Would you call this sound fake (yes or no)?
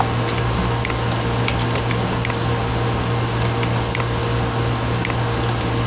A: no